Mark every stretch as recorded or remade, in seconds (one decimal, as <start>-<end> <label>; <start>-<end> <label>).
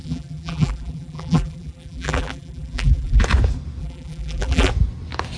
0.0-3.2 remade; 3.2-3.8 recorded; 3.8-4.7 remade; 4.7-5.4 recorded